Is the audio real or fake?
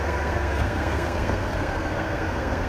fake